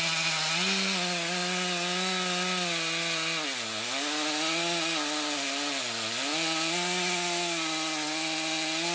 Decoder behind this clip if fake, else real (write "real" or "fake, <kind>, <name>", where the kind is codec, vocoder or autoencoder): real